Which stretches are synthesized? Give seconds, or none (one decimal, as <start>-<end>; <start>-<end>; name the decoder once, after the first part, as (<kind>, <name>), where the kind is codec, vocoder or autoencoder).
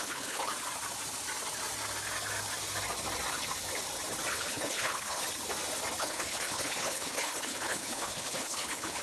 0.0-0.5 (codec, HILCodec); 4.3-5.2; 6.0-9.0